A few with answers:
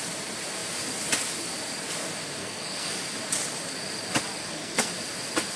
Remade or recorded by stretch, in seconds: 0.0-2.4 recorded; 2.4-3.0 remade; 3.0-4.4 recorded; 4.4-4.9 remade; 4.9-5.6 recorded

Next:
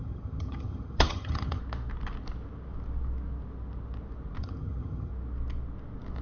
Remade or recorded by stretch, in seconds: 0.0-1.6 remade; 1.6-4.4 recorded; 4.4-5.1 remade; 5.1-6.2 recorded

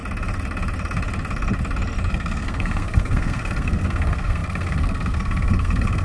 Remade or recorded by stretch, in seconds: 0.0-2.1 recorded; 2.1-6.0 remade

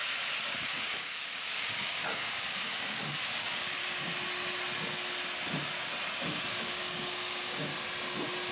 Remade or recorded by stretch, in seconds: 0.0-3.8 remade; 3.8-6.5 recorded; 6.5-7.7 remade; 7.7-8.5 recorded